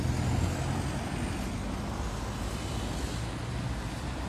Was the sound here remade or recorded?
recorded